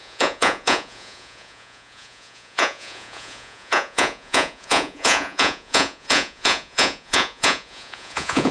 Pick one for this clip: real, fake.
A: fake